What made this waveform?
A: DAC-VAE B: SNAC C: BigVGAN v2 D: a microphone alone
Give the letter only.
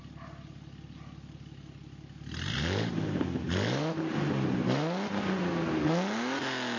D